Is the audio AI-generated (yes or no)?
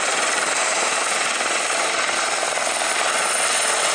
yes